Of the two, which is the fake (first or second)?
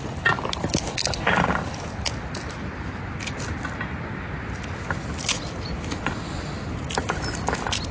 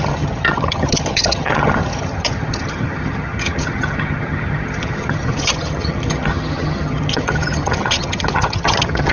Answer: second